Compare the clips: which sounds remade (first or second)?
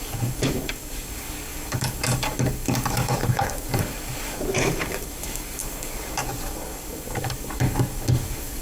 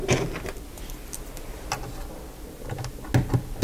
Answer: first